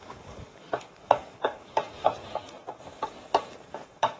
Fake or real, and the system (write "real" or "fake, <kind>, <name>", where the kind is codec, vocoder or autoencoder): fake, codec, DAC